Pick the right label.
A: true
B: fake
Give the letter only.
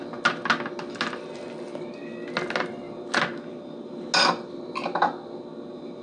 A